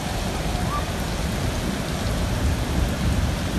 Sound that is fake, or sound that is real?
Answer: real